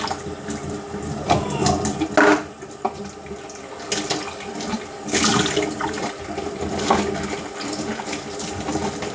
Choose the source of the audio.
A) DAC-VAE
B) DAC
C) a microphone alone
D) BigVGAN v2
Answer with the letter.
C